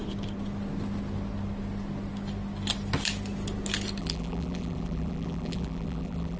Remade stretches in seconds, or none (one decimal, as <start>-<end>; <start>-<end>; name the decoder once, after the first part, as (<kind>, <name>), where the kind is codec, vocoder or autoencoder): 4.0-6.4 (vocoder, BigVGAN v2)

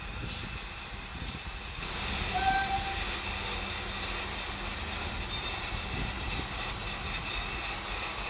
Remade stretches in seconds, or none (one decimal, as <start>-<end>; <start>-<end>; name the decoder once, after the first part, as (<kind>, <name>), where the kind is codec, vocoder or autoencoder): 1.1-1.9 (vocoder, Vocos)